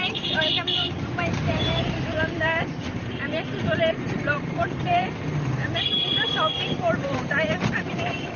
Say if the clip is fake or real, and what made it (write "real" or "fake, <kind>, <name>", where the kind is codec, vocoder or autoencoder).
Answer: fake, vocoder, BigVGAN v2